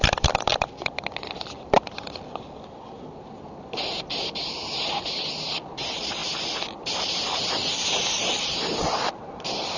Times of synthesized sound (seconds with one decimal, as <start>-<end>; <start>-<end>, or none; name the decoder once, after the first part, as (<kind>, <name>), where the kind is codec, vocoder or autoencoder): none